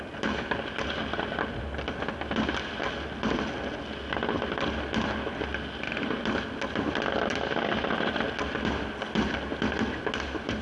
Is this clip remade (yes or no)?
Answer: no